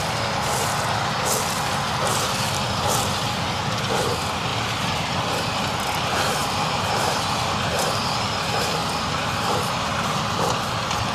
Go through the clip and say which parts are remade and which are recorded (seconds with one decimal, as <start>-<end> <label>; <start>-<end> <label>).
0.0-4.5 recorded; 4.5-5.1 remade; 5.1-6.4 recorded; 6.4-8.2 remade; 8.2-8.8 recorded; 8.8-10.5 remade; 10.5-11.1 recorded